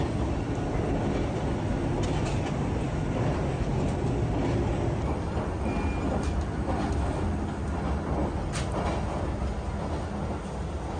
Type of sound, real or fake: real